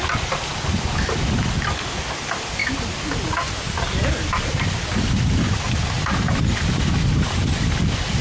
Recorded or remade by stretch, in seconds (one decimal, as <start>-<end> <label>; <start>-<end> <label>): 0.0-8.2 recorded